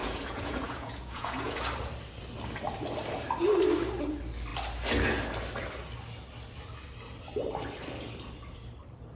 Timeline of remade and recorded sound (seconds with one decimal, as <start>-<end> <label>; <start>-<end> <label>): 0.0-1.6 remade; 1.6-9.2 recorded